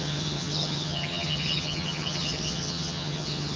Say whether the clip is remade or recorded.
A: remade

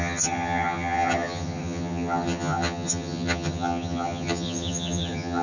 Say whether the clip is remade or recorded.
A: remade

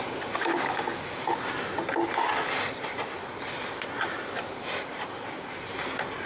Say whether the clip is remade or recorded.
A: recorded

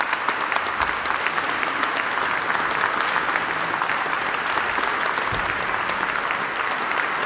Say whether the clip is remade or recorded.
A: recorded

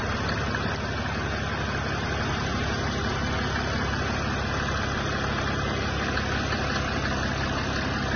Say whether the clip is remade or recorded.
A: recorded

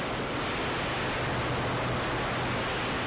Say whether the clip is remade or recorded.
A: recorded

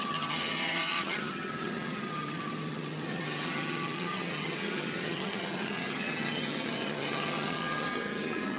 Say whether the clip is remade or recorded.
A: remade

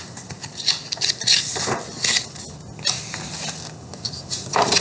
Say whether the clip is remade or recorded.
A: recorded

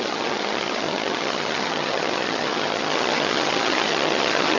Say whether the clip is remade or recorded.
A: remade